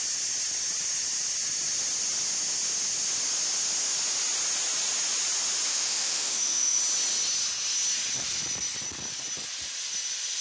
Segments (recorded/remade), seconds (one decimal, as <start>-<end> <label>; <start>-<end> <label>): 0.0-5.7 recorded; 5.7-6.8 remade; 6.8-10.4 recorded